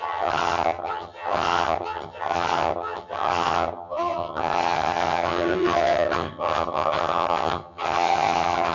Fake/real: fake